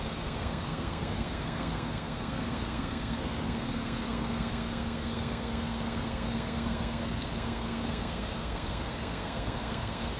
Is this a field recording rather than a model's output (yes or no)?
no